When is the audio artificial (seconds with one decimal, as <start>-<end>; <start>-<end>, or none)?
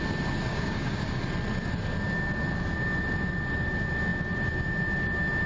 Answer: 0.5-1.2